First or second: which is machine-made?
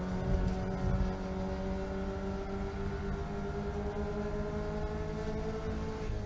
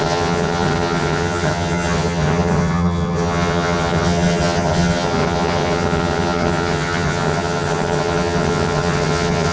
second